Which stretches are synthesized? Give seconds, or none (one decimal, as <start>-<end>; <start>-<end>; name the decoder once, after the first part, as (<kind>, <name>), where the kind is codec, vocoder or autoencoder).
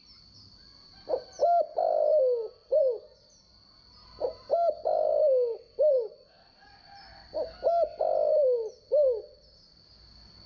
none